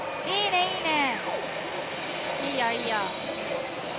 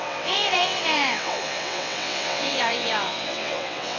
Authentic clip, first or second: first